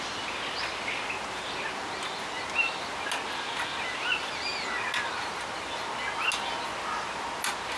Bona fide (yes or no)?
yes